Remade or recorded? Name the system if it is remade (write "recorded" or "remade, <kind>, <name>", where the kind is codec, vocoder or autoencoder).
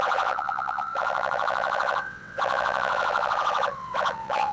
remade, vocoder, WaveNeXt